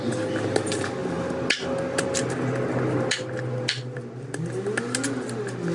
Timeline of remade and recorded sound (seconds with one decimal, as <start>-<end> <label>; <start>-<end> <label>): 0.0-5.7 recorded